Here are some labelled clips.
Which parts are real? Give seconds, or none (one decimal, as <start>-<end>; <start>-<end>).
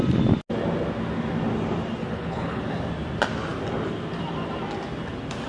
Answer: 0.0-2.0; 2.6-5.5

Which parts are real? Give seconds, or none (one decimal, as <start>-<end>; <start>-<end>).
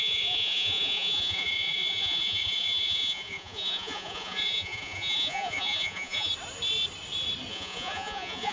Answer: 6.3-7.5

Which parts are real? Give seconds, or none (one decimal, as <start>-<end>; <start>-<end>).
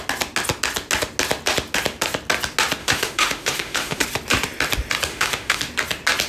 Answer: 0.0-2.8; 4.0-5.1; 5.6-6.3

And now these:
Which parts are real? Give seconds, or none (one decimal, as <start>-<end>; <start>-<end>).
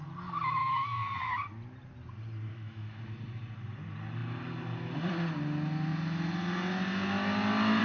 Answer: 0.0-0.6; 1.3-2.5; 3.0-7.8